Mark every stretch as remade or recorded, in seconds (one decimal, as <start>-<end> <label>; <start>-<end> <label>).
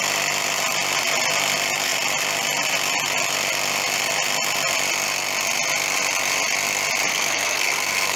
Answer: 0.0-7.1 recorded; 7.1-8.2 remade